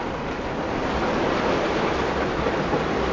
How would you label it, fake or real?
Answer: real